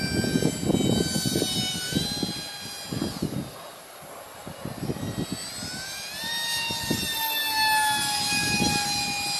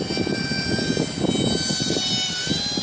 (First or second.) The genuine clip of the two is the first